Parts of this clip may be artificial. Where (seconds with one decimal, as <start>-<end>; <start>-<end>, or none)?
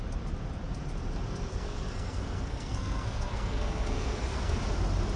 1.5-4.6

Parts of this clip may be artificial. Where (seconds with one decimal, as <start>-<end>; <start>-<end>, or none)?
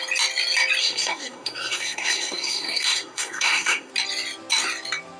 0.8-3.9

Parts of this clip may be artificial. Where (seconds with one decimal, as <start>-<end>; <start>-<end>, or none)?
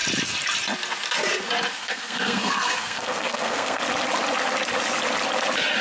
1.8-3.8